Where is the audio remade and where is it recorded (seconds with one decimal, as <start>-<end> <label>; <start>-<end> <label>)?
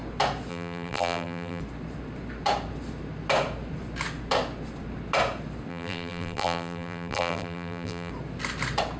0.0-0.5 recorded; 0.5-1.6 remade; 1.6-5.7 recorded; 5.7-8.1 remade; 8.1-9.0 recorded